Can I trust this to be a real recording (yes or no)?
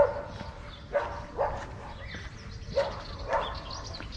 yes